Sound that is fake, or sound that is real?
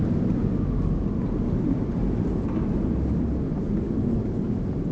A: real